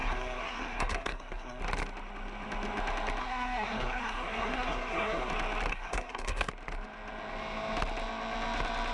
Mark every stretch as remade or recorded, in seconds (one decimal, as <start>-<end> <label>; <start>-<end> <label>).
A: 0.0-1.6 remade; 1.6-3.2 recorded; 3.2-5.3 remade; 5.3-5.7 recorded; 5.7-6.5 remade; 6.5-8.9 recorded

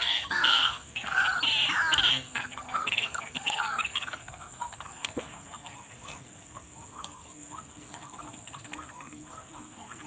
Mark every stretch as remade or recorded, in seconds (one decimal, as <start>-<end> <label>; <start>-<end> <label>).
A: 0.0-1.2 remade; 1.2-2.1 recorded; 2.1-10.1 remade

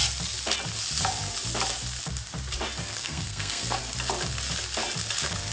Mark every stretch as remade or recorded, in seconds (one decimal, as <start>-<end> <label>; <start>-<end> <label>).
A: 0.0-3.0 recorded; 3.0-3.8 remade; 3.8-5.5 recorded